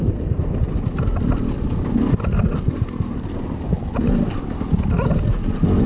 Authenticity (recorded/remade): recorded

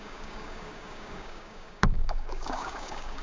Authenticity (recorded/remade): remade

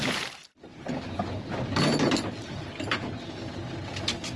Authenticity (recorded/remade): recorded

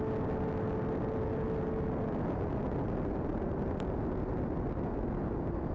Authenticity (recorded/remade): recorded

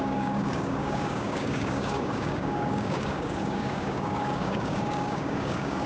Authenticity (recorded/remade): remade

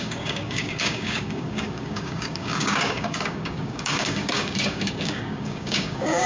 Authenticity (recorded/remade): remade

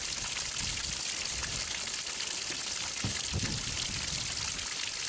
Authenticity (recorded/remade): recorded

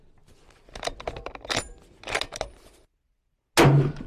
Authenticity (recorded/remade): recorded